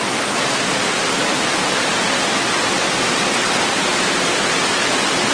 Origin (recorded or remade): recorded